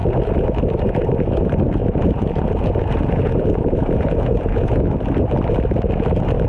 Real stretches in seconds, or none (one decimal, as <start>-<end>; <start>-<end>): 0.6-1.8; 4.8-6.5